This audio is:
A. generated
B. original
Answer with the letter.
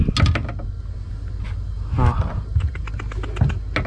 B